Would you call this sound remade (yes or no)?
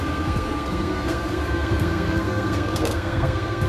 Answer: yes